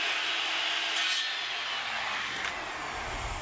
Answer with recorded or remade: recorded